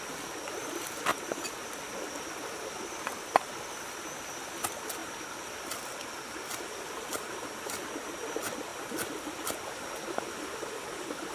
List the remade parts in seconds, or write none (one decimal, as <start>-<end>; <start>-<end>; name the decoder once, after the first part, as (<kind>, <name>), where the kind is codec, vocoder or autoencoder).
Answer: 1.1-1.8 (vocoder, BigVGAN v2); 5.0-5.6